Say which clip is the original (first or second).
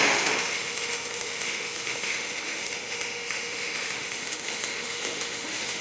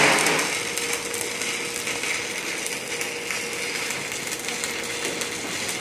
second